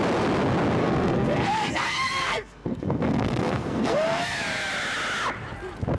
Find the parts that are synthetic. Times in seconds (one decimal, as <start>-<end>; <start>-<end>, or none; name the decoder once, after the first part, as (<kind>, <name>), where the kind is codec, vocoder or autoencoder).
0.8-4.4 (codec, SNAC)